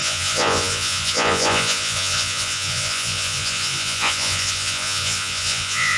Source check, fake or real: fake